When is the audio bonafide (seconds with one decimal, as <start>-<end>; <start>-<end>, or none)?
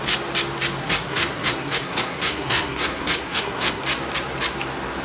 0.0-0.8; 3.8-5.0